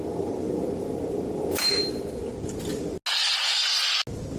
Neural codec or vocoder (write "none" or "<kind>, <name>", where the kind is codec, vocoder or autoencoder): none